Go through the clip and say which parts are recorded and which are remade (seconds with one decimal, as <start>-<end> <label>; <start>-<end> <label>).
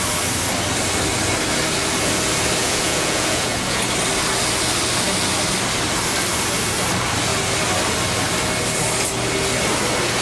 0.0-2.6 recorded; 2.6-3.8 remade; 3.8-10.2 recorded